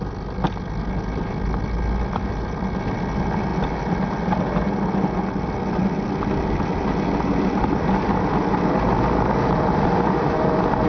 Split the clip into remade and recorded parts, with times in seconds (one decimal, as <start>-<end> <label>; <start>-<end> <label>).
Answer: 0.0-10.9 recorded